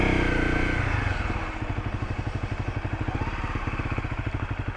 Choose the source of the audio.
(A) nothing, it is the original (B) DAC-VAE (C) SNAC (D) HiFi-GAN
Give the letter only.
A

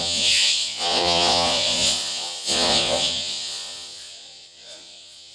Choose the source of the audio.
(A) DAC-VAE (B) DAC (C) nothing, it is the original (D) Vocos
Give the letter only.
D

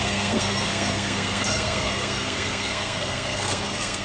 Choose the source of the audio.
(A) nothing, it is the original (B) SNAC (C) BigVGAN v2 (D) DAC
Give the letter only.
B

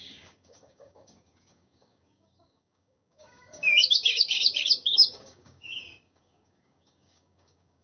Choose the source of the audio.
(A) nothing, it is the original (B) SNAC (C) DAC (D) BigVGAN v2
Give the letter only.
C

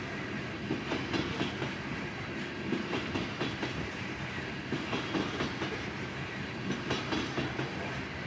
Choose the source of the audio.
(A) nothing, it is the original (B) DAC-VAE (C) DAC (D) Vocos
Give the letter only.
A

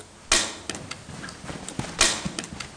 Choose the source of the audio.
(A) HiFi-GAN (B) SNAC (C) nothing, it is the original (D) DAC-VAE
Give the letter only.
C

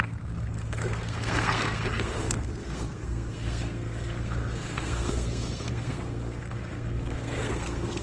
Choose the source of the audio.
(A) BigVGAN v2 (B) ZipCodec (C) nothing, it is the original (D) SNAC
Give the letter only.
D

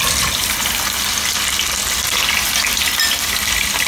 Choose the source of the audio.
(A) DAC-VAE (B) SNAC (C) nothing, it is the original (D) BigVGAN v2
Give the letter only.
C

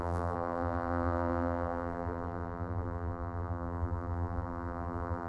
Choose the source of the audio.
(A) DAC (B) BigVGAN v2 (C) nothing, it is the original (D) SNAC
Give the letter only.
B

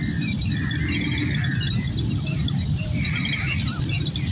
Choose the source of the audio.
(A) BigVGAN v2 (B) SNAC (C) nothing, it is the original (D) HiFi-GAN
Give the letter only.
C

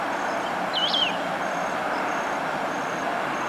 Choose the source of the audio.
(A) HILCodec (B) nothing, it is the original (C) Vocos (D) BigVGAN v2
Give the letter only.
D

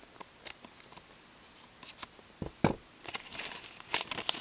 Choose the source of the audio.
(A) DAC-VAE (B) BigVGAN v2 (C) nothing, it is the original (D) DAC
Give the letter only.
C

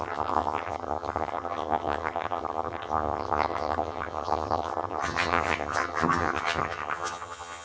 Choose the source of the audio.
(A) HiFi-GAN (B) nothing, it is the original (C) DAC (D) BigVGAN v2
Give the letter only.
A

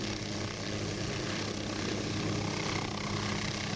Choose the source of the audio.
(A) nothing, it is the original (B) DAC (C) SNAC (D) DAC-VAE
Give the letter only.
A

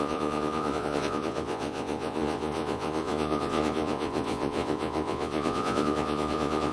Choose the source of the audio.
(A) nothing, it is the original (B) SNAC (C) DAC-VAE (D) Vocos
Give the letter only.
D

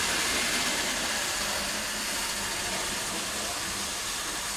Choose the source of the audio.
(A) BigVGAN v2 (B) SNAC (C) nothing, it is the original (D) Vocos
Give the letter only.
C